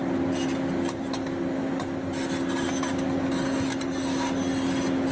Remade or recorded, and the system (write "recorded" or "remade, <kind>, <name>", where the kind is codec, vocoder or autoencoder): recorded